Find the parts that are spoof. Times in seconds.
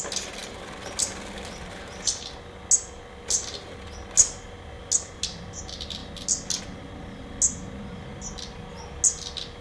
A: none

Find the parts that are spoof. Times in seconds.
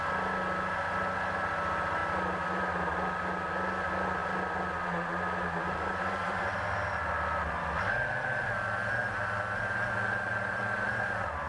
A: none